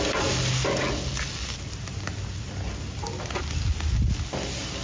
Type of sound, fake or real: real